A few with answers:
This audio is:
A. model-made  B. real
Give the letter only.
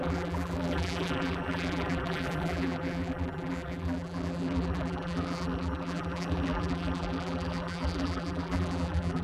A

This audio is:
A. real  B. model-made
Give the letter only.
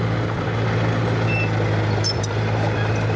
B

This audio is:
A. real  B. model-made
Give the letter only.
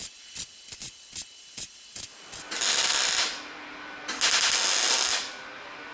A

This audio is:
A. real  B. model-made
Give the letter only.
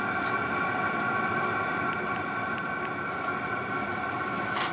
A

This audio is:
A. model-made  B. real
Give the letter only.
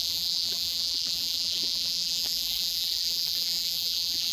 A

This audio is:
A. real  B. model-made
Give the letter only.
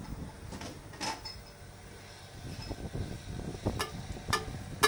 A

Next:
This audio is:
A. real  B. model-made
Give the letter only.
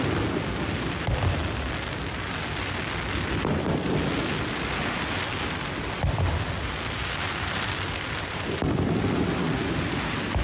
B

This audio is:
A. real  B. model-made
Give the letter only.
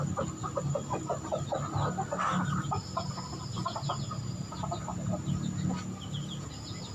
A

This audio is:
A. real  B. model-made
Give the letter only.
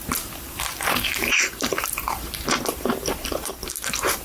B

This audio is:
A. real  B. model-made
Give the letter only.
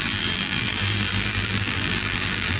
B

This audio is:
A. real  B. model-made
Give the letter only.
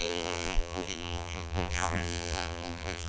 B